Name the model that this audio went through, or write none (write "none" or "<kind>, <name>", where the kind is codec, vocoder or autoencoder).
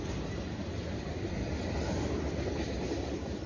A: none